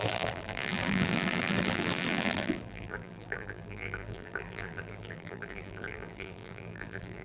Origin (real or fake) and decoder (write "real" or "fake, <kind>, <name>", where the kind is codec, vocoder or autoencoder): fake, vocoder, BigVGAN v2